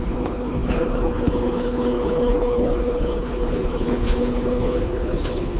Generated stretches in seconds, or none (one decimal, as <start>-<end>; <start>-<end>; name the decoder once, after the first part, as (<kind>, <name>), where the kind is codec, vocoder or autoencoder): 0.0-5.6 (codec, HILCodec)

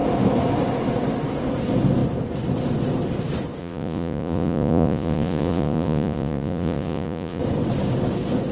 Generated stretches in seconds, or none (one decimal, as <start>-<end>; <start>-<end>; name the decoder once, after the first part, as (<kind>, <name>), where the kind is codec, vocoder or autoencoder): 3.6-7.4 (vocoder, Vocos)

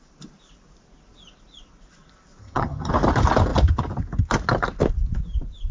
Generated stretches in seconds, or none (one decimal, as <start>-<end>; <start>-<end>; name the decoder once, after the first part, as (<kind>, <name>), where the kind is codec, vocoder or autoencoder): 2.4-2.9 (vocoder, HiFi-GAN)

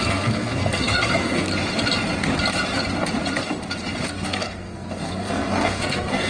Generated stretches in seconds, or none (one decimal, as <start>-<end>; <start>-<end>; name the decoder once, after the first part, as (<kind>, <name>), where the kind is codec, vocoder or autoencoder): 0.0-1.5 (codec, SNAC); 4.1-6.3

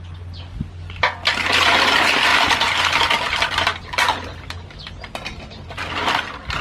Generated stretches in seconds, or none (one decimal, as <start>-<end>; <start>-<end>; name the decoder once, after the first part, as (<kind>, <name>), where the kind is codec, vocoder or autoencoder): none

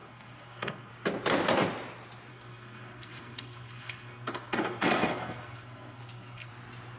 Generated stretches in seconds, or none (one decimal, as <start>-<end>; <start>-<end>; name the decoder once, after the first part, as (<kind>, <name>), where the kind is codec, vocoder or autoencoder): 0.0-0.9 (codec, SNAC); 2.3-6.5

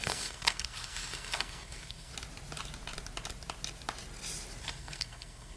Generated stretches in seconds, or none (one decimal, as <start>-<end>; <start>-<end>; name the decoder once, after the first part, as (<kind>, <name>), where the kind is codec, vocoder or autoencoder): 0.0-2.1 (codec, SNAC); 4.6-5.6

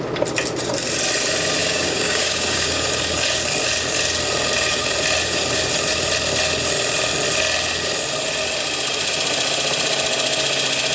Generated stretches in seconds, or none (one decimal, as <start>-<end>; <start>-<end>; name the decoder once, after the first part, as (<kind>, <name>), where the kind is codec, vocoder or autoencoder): 1.6-2.9 (codec, DAC)